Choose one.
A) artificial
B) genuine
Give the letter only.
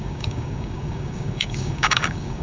A